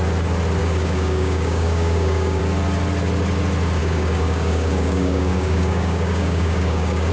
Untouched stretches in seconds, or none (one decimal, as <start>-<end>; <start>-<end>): 0.0-0.6; 2.4-3.8